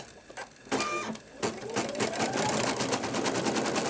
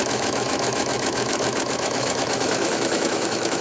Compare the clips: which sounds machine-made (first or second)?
second